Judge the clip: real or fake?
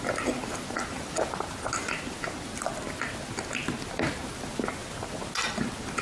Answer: real